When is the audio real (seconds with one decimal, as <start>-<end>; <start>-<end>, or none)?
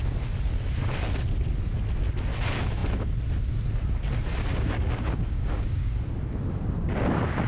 0.0-4.5; 6.1-7.5